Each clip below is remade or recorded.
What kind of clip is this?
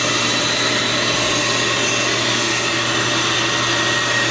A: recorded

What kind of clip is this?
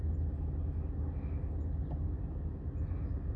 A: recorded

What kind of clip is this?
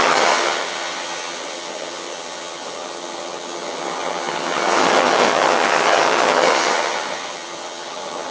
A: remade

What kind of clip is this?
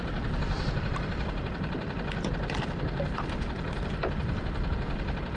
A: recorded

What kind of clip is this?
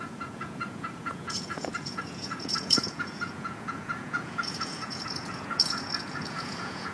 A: remade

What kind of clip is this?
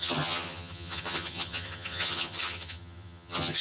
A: remade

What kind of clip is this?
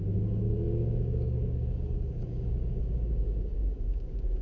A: remade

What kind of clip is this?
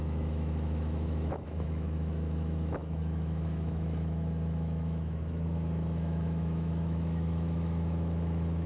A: remade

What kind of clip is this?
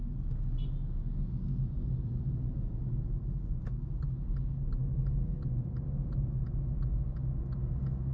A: recorded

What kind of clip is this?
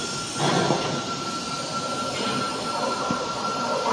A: recorded